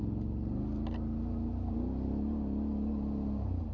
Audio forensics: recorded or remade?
recorded